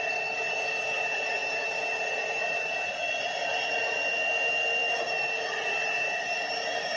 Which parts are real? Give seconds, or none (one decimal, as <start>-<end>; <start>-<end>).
0.0-7.0